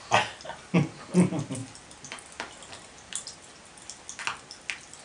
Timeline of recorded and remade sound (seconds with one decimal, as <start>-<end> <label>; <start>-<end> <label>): 0.0-5.0 recorded